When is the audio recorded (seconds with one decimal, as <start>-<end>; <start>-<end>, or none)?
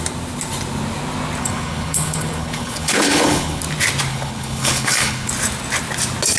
0.0-1.4; 3.6-4.1; 5.3-6.4